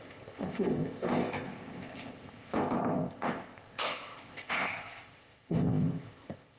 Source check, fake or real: fake